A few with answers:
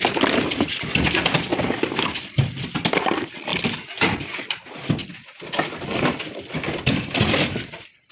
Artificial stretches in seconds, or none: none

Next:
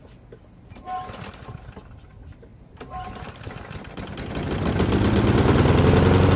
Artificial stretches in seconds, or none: 2.5-3.4 (vocoder, BigVGAN v2)

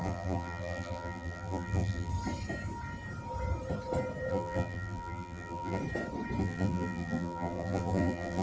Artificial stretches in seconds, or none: 0.0-2.1 (vocoder, BigVGAN v2); 4.3-5.8; 6.4-8.4

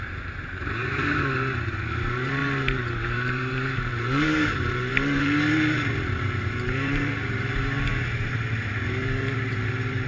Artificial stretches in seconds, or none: 0.0-10.1 (vocoder, BigVGAN v2)

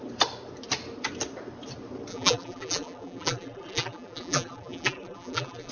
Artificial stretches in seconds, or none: 2.1-5.7 (vocoder, BigVGAN v2)

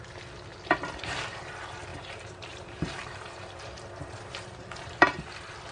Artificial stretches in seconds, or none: 0.5-1.5 (vocoder, BigVGAN v2); 1.9-5.3

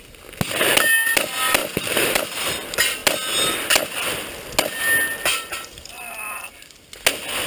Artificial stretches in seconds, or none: 1.6-2.5 (vocoder, BigVGAN v2); 5.3-5.9